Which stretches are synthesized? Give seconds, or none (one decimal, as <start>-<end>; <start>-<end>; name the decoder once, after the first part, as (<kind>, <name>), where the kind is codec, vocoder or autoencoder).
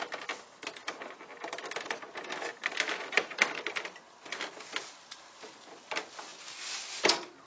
none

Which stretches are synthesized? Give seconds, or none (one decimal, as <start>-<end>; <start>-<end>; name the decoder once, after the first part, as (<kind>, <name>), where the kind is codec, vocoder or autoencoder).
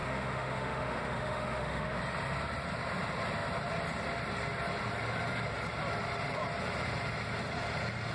0.0-2.0 (autoencoder, DAC-VAE)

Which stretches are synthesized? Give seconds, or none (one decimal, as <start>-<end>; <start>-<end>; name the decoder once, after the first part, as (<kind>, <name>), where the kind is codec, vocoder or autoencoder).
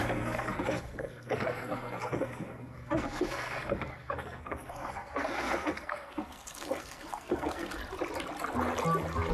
0.0-7.8 (codec, SNAC)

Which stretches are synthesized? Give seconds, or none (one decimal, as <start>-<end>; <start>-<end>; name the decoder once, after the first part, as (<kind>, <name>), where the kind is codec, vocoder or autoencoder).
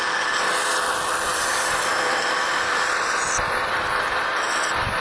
1.3-4.3 (vocoder, BigVGAN v2)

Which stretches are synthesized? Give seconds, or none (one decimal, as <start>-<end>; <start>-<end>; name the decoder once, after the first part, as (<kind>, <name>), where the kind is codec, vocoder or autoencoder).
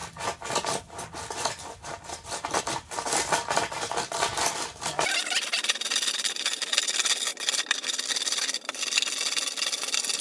7.3-8.8 (vocoder, BigVGAN v2)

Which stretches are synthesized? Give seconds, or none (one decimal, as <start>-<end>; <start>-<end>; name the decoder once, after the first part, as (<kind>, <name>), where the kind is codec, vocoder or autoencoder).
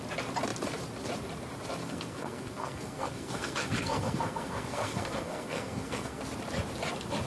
1.8-6.2 (codec, SNAC)